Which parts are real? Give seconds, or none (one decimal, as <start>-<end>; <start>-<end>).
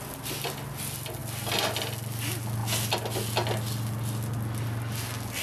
0.0-5.4